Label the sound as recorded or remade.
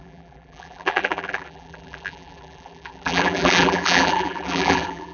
remade